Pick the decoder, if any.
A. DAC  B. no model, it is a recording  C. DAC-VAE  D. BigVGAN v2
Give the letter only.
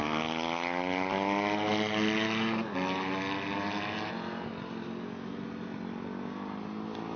B